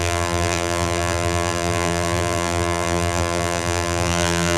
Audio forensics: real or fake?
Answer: fake